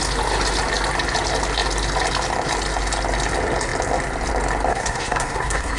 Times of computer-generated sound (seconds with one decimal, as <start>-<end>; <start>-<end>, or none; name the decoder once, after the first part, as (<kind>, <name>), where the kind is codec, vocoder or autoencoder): 4.7-5.8 (codec, SNAC)